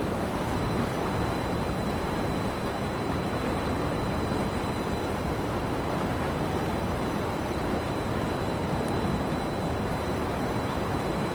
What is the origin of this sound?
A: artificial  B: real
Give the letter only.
A